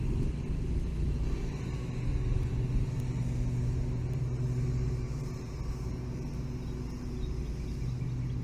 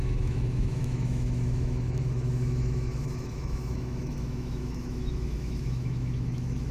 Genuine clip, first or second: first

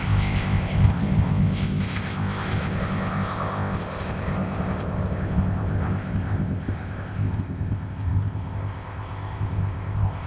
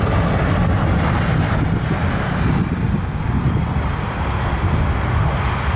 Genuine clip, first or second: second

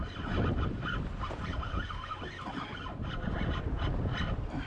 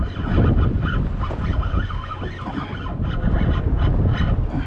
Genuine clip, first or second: second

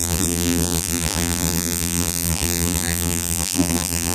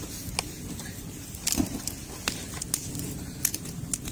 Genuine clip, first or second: second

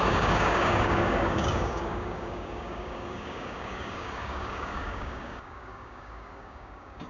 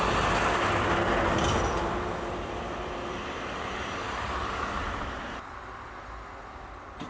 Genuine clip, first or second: second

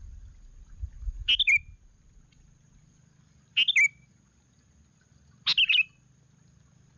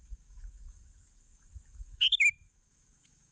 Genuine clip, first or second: first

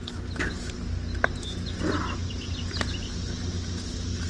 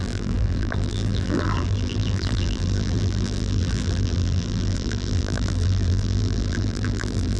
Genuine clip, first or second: first